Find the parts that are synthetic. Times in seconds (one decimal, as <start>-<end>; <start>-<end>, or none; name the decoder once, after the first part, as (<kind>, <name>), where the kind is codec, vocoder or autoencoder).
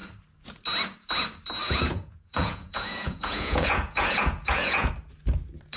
1.6-4.9 (vocoder, Vocos)